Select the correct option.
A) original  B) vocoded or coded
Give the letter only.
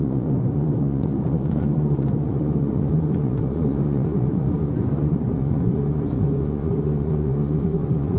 B